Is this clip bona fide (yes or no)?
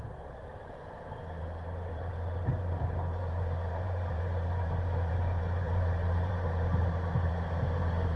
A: no